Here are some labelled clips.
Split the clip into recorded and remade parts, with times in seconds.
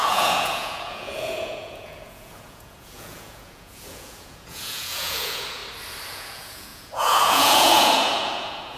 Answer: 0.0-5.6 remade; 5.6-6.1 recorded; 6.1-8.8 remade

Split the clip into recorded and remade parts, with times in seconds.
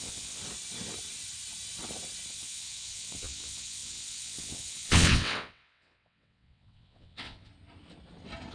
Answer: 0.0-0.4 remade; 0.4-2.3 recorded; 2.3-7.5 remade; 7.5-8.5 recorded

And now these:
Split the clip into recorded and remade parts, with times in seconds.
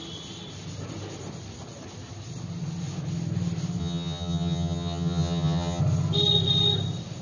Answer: 0.0-3.8 recorded; 3.8-5.8 remade; 5.8-7.2 recorded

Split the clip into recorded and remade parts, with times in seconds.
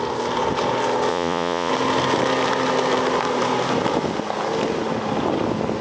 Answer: 0.0-1.1 recorded; 1.1-1.7 remade; 1.7-5.8 recorded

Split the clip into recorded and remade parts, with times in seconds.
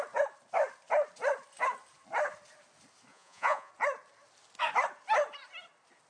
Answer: 0.0-3.1 recorded; 3.1-3.7 remade; 3.7-6.1 recorded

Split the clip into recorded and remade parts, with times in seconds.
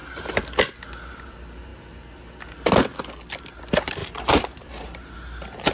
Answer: 0.0-4.0 recorded; 4.0-5.1 remade; 5.1-5.7 recorded